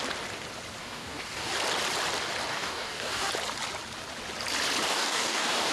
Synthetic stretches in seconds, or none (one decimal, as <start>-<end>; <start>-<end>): 0.8-1.5; 2.5-3.3; 4.9-5.7

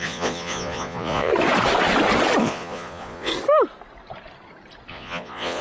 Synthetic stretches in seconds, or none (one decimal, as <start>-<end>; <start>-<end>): 0.0-1.3; 2.4-3.3; 4.9-5.6

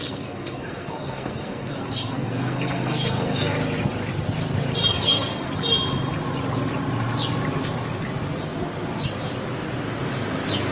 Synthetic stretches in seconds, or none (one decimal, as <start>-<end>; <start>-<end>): 0.0-3.6; 4.9-5.5

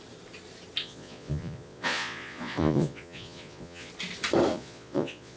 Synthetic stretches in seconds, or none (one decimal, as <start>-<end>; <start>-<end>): 0.8-3.9; 4.5-5.4

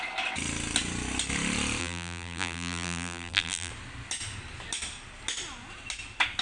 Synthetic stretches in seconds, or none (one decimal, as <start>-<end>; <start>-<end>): 1.8-3.7

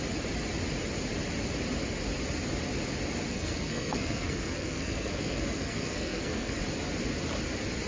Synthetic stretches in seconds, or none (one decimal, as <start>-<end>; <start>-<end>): 3.3-6.6

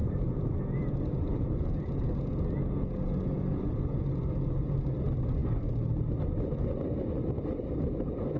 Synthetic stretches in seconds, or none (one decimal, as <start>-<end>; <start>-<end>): 0.0-4.8

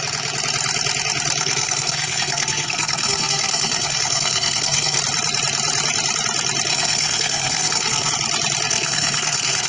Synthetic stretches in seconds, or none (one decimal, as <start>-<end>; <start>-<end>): 1.4-5.0; 6.7-8.1; 8.7-9.7